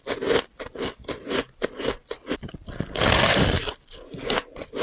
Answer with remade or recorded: recorded